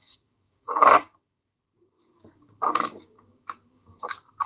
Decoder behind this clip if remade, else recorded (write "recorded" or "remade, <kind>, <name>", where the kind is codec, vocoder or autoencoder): remade, codec, DAC